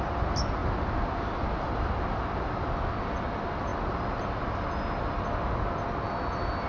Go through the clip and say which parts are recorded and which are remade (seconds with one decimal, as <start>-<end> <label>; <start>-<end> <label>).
0.0-6.7 recorded